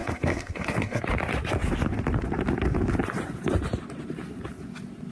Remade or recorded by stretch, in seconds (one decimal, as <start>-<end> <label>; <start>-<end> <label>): 0.0-1.0 remade; 1.0-5.1 recorded